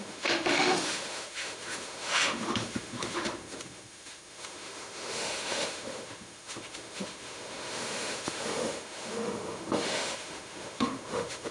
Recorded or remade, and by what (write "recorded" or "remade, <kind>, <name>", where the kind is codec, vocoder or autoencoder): remade, autoencoder, DAC-VAE